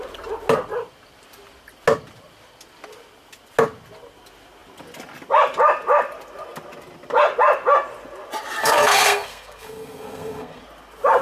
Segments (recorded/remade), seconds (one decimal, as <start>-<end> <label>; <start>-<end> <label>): 0.0-8.6 recorded; 8.6-10.6 remade; 10.6-11.2 recorded